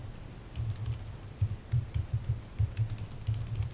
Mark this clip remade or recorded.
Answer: recorded